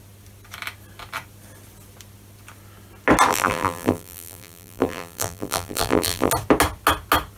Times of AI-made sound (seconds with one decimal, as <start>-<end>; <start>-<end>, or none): 3.3-6.3